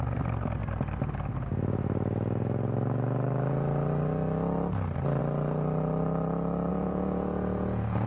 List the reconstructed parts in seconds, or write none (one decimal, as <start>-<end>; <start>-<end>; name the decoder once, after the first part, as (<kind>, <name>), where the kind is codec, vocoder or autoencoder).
6.7-8.1 (vocoder, Vocos)

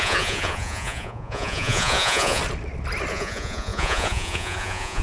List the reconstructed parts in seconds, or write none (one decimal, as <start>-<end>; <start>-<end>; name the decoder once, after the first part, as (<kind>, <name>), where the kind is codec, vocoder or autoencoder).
0.0-2.4 (vocoder, Vocos); 3.1-5.0